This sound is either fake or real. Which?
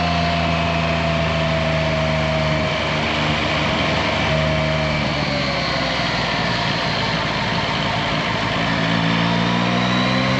real